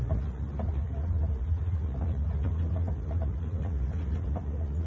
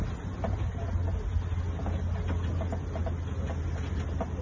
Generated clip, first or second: first